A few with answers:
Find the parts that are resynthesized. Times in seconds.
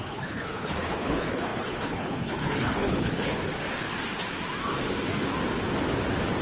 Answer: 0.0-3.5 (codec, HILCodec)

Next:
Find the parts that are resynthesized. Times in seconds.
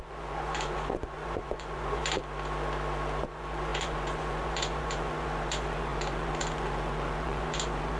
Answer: 0.0-2.0 (vocoder, Vocos); 3.2-8.0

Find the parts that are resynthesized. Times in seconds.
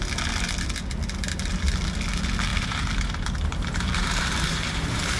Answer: 2.5-5.2 (vocoder, BigVGAN v2)